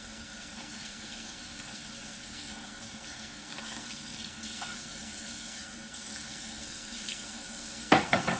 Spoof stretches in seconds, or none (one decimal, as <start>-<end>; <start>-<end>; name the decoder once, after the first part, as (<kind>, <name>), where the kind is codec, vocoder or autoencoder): 0.0-8.4 (codec, SNAC)